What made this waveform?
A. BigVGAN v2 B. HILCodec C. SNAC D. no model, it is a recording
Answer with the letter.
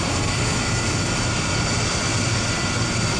D